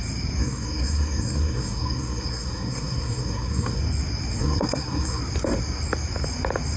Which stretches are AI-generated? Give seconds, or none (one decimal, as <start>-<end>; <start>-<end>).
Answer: 0.4-3.8; 4.4-5.2